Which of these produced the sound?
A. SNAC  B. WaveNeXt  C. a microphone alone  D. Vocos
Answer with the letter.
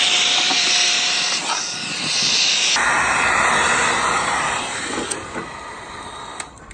C